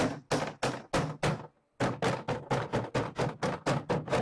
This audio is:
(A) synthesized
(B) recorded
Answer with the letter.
B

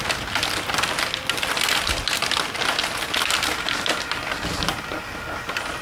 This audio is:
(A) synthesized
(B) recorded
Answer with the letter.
B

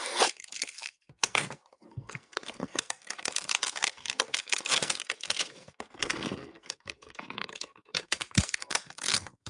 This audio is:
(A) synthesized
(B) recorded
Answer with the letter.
A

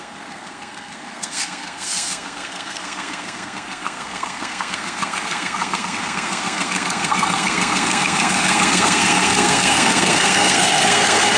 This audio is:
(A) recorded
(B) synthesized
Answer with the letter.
B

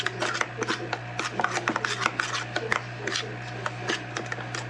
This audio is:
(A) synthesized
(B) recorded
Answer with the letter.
B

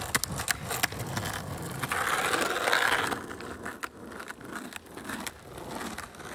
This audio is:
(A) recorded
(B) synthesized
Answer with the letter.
A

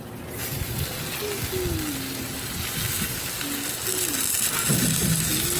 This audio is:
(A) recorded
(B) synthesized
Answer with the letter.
A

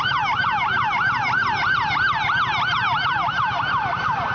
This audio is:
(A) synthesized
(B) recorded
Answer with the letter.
B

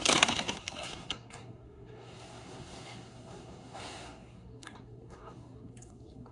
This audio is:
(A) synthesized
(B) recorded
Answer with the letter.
A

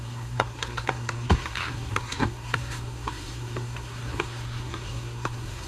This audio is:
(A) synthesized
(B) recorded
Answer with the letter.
A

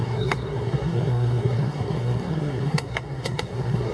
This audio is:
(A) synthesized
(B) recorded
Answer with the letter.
A